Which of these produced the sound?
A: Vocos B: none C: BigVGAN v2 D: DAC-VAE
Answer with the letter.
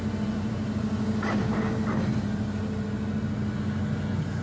B